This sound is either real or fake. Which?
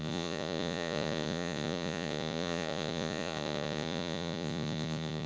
fake